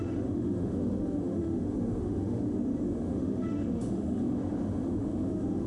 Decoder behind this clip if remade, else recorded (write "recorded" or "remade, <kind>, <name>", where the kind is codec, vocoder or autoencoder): remade, autoencoder, DAC-VAE